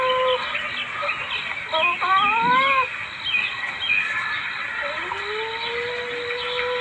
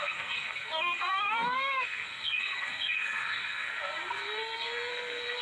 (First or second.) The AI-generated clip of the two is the second